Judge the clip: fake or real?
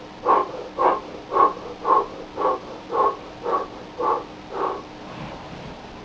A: real